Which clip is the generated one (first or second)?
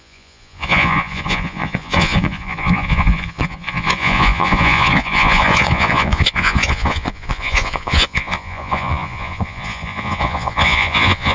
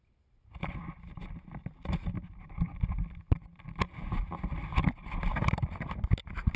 first